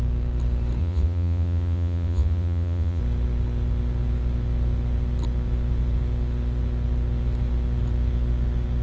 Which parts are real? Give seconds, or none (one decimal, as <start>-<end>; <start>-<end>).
0.0-0.8; 3.0-8.8